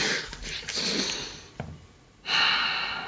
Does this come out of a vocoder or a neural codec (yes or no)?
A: no